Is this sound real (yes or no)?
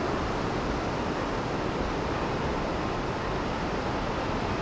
yes